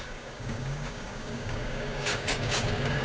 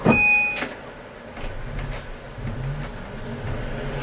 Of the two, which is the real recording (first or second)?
second